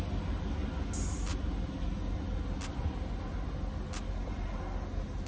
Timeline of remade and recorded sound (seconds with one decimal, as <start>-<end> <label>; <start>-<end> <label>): 0.0-5.3 recorded